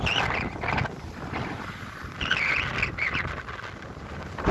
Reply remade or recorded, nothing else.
recorded